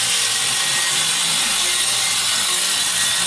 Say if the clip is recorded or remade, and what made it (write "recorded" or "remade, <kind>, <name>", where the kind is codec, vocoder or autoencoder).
recorded